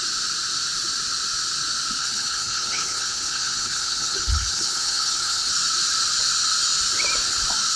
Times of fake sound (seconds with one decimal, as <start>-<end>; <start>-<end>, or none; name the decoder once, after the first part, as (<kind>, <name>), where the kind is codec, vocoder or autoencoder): 2.0-5.5 (codec, HILCodec)